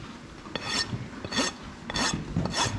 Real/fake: real